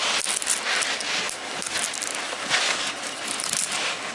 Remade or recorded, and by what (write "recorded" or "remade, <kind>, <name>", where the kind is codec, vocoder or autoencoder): recorded